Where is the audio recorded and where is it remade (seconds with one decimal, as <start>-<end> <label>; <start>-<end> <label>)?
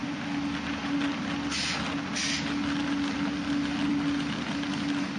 0.0-5.2 recorded